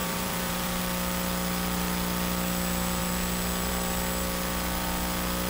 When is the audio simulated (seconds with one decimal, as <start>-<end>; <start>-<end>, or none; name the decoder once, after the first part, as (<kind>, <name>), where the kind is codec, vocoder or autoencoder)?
0.0-0.8 (vocoder, BigVGAN v2)